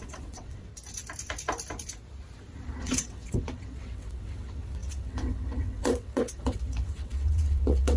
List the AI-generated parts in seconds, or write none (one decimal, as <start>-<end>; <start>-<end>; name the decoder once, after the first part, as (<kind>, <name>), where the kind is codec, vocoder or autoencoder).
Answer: 0.0-0.7 (vocoder, WaveNeXt); 2.8-8.0